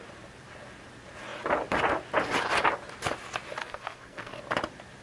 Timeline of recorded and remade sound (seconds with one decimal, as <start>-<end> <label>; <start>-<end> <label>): 0.0-3.6 recorded; 3.6-4.4 remade; 4.4-5.0 recorded